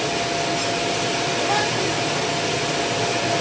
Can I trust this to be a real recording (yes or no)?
yes